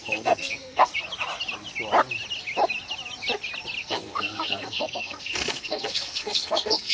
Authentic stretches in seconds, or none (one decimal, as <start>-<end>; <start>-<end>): 0.9-3.8